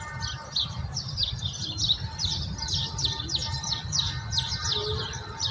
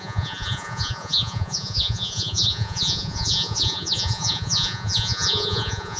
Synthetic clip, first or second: second